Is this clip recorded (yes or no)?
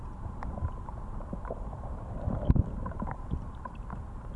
no